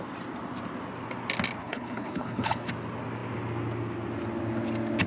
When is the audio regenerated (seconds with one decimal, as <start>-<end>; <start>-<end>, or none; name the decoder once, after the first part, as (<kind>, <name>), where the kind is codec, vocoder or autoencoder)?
1.6-2.7 (codec, HILCodec)